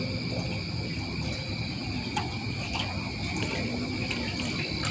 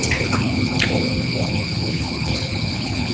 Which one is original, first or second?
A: first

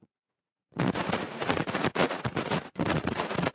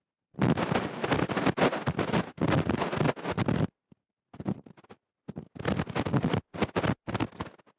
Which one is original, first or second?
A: second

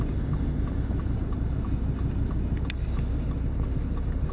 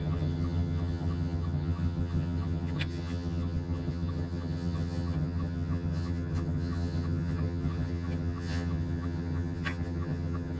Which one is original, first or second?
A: first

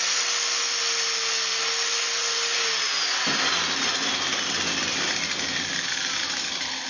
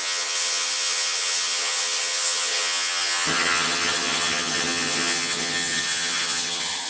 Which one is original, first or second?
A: first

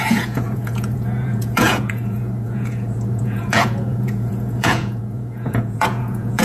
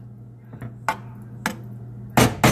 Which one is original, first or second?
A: second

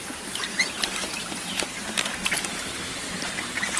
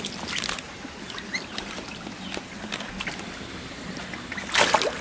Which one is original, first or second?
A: second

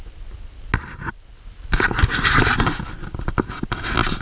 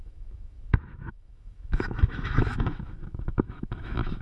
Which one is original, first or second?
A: first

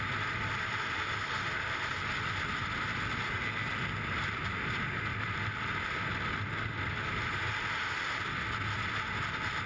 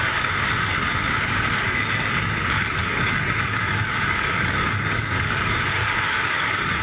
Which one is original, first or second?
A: first